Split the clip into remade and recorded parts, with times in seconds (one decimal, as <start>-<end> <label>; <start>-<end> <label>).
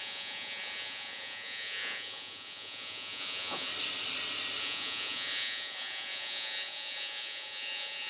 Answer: 0.0-3.7 remade; 3.7-4.6 recorded; 4.6-8.1 remade